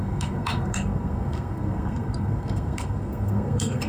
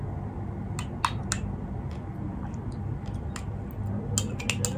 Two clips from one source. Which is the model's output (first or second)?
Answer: first